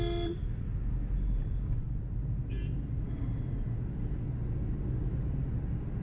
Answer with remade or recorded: recorded